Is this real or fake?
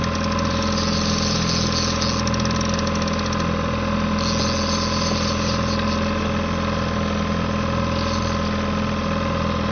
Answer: real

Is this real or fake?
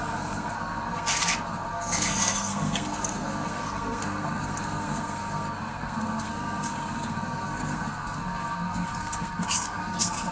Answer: fake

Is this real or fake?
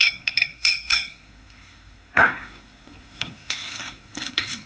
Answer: fake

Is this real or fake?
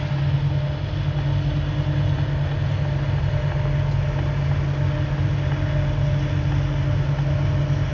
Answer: real